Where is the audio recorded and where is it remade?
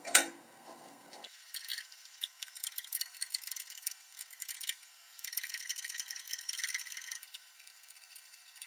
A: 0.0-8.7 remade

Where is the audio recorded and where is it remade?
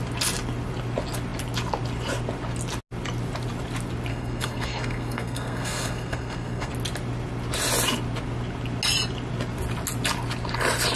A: 0.0-4.1 recorded; 4.1-6.7 remade; 6.7-11.0 recorded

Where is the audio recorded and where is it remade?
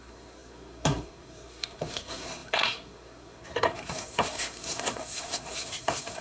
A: 0.0-6.2 remade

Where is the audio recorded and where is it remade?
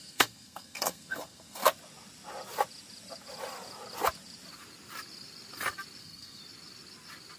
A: 0.0-1.6 remade; 1.6-6.0 recorded; 6.0-6.4 remade; 6.4-7.4 recorded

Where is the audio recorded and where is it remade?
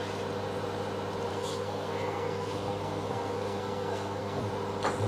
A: 0.0-1.3 recorded; 1.3-4.4 remade; 4.4-5.1 recorded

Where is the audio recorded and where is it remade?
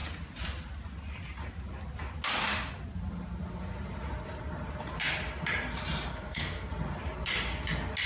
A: 0.0-6.1 recorded; 6.1-6.7 remade; 6.7-8.1 recorded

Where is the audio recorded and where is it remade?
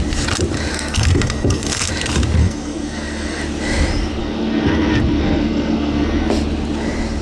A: 0.0-0.7 recorded; 0.7-1.9 remade; 1.9-2.4 recorded; 2.4-3.4 remade; 3.4-4.2 recorded; 4.2-6.3 remade; 6.3-7.2 recorded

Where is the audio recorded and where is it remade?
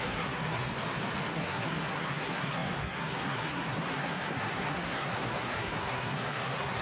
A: 0.0-0.7 remade; 0.7-1.3 recorded; 1.3-6.8 remade